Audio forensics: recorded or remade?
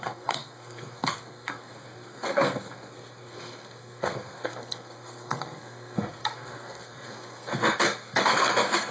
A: remade